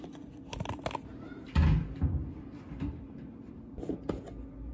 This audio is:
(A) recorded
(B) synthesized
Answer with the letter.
A